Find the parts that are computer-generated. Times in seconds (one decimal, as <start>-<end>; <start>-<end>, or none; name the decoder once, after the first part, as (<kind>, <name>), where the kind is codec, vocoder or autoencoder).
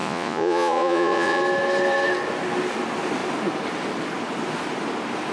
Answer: 0.0-1.4 (vocoder, Vocos)